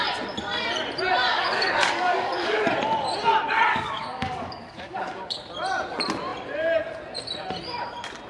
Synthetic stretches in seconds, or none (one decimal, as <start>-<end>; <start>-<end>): 1.3-2.6; 3.7-5.4